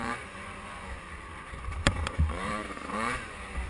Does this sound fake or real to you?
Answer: fake